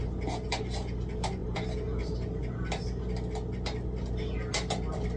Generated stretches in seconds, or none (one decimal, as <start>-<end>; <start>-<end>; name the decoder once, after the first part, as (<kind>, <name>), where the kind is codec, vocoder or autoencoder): none